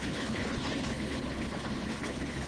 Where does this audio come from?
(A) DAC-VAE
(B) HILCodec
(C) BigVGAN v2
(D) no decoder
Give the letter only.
B